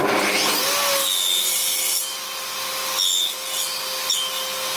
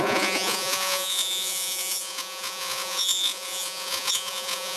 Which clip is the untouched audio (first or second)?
first